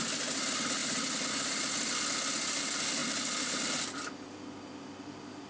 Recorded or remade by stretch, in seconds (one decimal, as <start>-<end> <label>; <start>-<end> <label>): 0.0-0.8 recorded; 0.8-1.3 remade; 1.3-3.0 recorded; 3.0-3.6 remade; 3.6-5.5 recorded